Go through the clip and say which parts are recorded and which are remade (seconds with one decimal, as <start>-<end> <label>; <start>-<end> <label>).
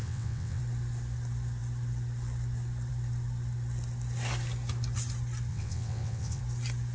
0.0-0.6 remade; 0.6-5.5 recorded; 5.5-6.4 remade; 6.4-6.9 recorded